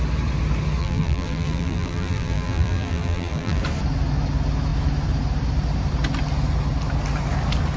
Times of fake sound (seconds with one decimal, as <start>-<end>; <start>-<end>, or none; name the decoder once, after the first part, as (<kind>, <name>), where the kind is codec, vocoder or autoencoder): 0.8-3.6 (vocoder, BigVGAN v2)